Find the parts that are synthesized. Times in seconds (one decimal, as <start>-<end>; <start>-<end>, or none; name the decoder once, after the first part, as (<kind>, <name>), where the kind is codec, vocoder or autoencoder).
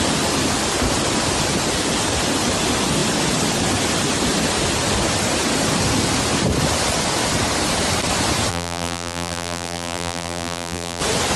8.5-11.0 (vocoder, BigVGAN v2)